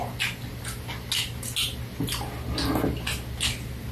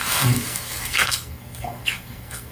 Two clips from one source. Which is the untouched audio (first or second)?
first